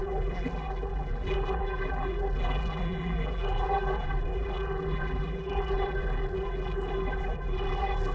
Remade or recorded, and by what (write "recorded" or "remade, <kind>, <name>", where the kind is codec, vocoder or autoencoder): remade, vocoder, BigVGAN v2